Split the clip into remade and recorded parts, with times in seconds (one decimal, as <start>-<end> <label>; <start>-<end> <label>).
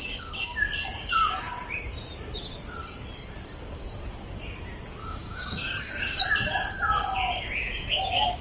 0.0-5.0 recorded; 5.0-6.2 remade; 6.2-8.4 recorded